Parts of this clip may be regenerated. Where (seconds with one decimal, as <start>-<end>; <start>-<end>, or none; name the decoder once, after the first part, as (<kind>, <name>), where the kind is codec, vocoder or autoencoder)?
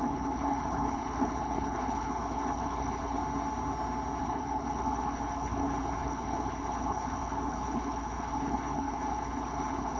0.0-3.2 (codec, HILCodec); 4.2-10.0